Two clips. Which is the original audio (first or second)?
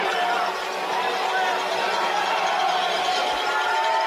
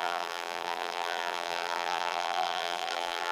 first